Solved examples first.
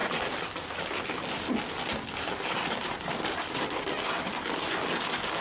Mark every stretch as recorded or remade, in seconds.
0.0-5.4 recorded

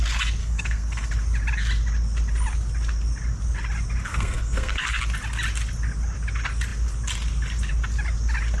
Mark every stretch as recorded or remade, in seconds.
0.0-0.4 recorded; 0.4-1.1 remade; 1.1-4.1 recorded; 4.1-5.0 remade; 5.0-8.6 recorded

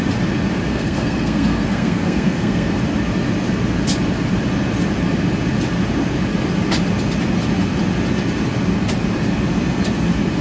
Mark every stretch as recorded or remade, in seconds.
0.0-0.7 recorded; 0.7-2.8 remade; 2.8-10.4 recorded

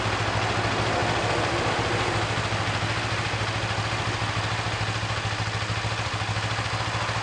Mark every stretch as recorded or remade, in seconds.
0.0-7.2 recorded